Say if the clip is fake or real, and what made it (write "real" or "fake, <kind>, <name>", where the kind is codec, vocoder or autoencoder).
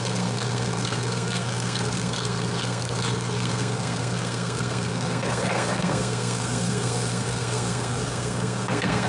fake, codec, SNAC